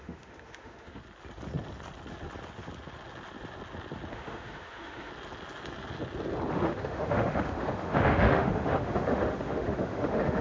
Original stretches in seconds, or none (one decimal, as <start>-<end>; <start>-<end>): 1.0-4.1; 5.1-6.5